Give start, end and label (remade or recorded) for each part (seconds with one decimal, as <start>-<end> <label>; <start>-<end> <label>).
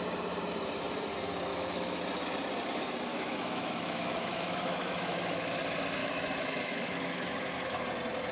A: 0.0-1.5 recorded; 1.5-2.0 remade; 2.0-3.1 recorded; 3.1-5.6 remade; 5.6-6.0 recorded; 6.0-7.8 remade; 7.8-8.3 recorded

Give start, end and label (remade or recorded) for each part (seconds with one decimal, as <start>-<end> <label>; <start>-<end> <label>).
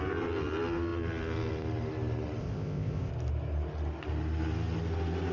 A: 0.0-2.4 recorded; 2.4-3.1 remade; 3.1-5.3 recorded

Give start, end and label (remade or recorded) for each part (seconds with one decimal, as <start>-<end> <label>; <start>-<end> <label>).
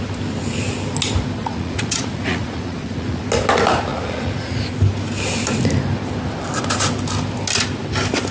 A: 0.0-1.4 recorded; 1.4-3.2 remade; 3.2-3.9 recorded; 3.9-4.6 remade; 4.6-8.3 recorded